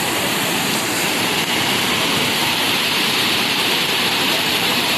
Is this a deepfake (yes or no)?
yes